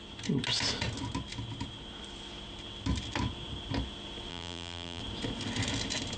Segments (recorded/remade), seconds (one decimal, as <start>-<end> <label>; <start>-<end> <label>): 0.0-4.3 recorded; 4.3-5.0 remade; 5.0-6.2 recorded